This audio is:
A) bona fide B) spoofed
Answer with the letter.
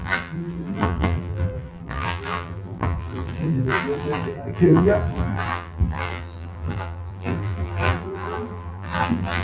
B